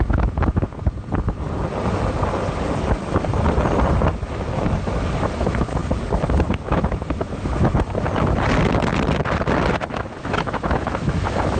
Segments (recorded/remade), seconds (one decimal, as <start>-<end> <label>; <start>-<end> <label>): 0.0-0.8 remade; 0.8-4.0 recorded; 4.0-5.8 remade; 5.8-6.4 recorded; 6.4-7.7 remade; 7.7-9.9 recorded; 9.9-11.6 remade